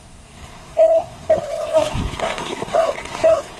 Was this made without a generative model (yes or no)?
no